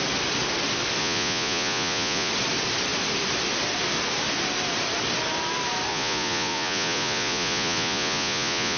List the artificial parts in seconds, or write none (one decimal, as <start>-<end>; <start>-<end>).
1.0-2.3; 5.9-8.8